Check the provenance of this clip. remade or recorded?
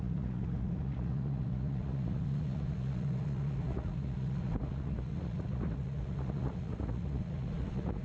remade